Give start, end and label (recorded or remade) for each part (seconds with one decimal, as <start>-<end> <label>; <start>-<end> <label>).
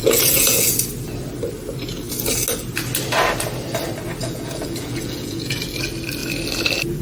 0.0-0.9 remade; 0.9-4.2 recorded; 4.2-5.6 remade; 5.6-7.0 recorded